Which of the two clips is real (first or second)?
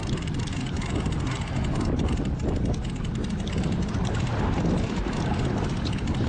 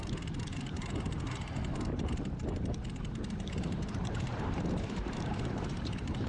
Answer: first